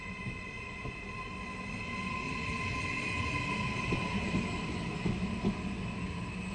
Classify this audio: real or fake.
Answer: real